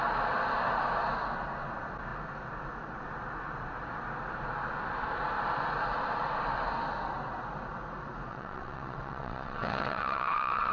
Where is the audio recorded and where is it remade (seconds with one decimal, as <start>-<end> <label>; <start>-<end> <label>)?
0.0-8.3 recorded; 8.3-10.7 remade